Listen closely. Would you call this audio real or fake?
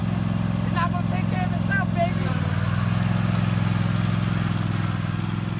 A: real